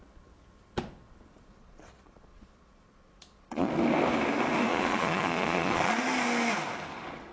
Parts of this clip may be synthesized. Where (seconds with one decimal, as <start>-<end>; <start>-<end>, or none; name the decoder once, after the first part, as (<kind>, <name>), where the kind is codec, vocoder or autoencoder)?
1.3-3.7 (vocoder, Vocos); 4.7-6.0